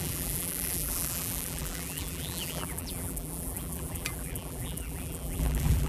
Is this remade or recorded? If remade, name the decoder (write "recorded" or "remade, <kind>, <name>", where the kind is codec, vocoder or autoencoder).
remade, vocoder, BigVGAN v2